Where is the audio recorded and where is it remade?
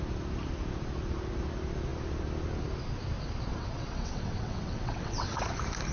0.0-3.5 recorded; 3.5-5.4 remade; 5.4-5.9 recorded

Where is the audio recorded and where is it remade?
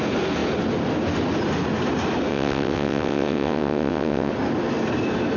0.0-2.3 recorded; 2.3-4.3 remade; 4.3-5.4 recorded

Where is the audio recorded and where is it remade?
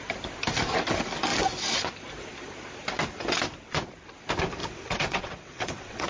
0.0-4.6 recorded; 4.6-6.1 remade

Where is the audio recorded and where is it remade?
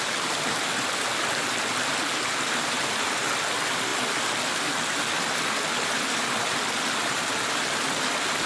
0.0-8.5 recorded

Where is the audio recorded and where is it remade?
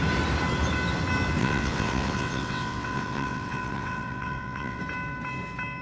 0.0-1.4 recorded; 1.4-4.8 remade; 4.8-5.8 recorded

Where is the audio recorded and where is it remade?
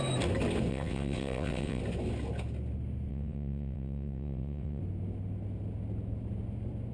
0.0-0.7 recorded; 0.7-1.8 remade; 1.8-3.1 recorded; 3.1-4.8 remade; 4.8-6.9 recorded